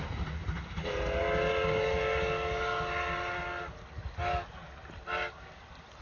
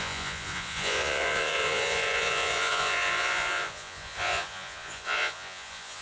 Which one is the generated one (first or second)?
second